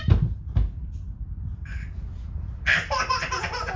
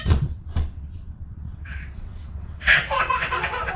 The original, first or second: first